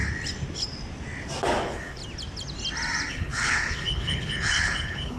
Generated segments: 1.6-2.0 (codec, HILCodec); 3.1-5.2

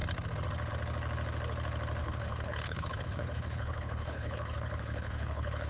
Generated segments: 2.0-5.7 (codec, HILCodec)

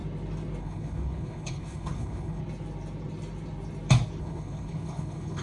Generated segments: 0.6-2.4 (codec, HILCodec); 4.2-5.4